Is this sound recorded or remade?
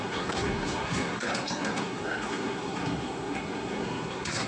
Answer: remade